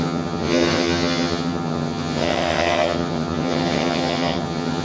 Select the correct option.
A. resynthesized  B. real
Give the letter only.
A